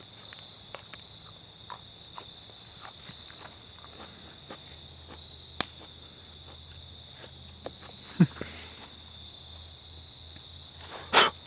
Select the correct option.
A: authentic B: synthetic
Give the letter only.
A